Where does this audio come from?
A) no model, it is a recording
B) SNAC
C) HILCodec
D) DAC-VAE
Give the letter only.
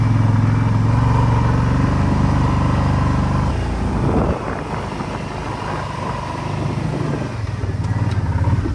A